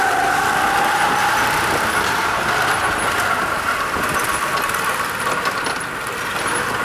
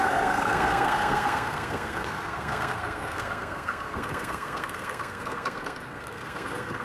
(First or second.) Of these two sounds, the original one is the first